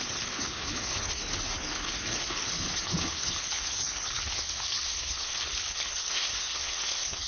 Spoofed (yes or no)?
yes